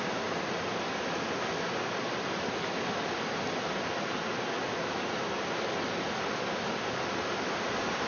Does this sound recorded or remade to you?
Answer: recorded